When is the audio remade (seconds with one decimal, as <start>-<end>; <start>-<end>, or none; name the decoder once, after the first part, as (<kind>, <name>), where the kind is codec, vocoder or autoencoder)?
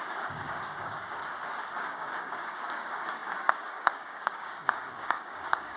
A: 0.0-1.2 (codec, DAC); 1.8-5.8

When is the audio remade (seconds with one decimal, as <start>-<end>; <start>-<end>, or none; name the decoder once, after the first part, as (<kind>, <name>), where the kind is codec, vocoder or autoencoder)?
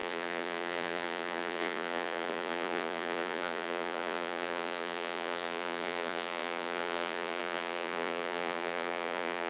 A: 0.0-9.5 (vocoder, Vocos)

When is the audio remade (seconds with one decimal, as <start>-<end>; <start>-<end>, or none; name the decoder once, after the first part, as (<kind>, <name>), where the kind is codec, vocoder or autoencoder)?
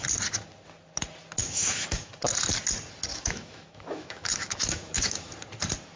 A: 1.4-2.1 (autoencoder, DAC-VAE); 3.1-5.3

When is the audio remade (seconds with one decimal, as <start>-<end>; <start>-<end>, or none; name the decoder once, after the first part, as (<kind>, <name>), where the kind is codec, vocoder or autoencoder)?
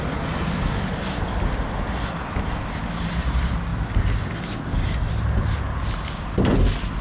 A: none